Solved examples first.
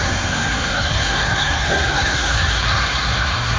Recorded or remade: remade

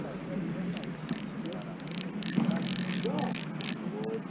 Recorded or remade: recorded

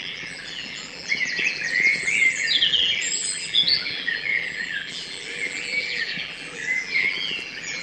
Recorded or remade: remade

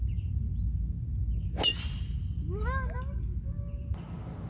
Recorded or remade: recorded